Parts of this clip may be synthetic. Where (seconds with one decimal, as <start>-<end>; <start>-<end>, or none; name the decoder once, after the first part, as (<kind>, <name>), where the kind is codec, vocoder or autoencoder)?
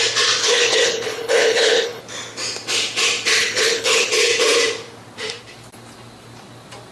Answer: 0.4-2.0 (codec, HILCodec); 3.4-4.1